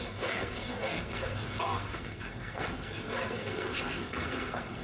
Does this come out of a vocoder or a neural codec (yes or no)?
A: yes